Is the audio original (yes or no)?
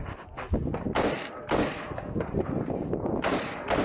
yes